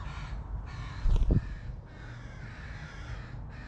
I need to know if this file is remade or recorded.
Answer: recorded